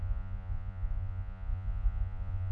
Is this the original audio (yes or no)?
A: no